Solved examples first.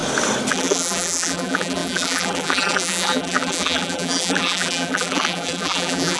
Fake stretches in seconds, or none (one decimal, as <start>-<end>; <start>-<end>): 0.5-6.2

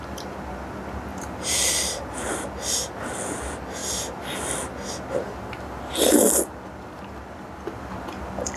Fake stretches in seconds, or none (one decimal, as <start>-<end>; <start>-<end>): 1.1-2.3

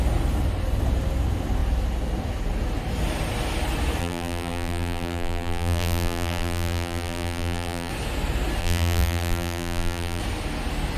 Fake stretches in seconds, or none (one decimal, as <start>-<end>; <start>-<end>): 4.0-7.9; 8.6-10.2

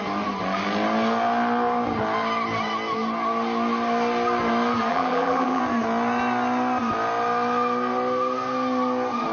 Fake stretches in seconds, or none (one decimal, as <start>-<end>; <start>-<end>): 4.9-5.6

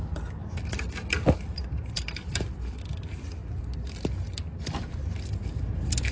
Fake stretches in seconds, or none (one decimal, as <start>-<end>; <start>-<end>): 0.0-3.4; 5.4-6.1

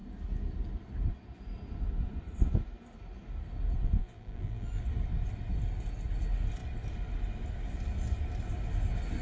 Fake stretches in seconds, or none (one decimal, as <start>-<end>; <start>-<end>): 4.0-4.8

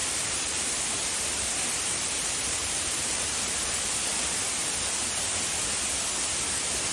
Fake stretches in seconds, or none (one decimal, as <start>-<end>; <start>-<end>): 0.0-4.0

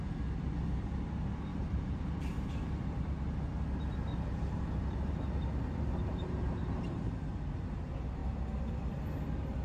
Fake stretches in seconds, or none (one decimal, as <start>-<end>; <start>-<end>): 1.5-3.0; 4.1-7.2